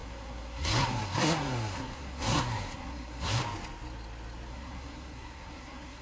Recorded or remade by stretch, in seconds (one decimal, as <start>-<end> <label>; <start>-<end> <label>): 0.0-3.4 remade; 3.4-4.5 recorded; 4.5-6.0 remade